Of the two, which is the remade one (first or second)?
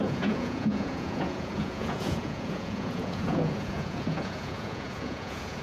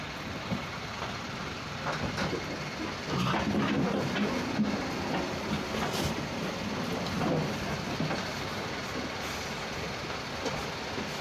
first